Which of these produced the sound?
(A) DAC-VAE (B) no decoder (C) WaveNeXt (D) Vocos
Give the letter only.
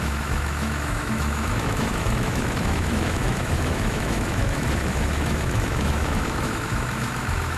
A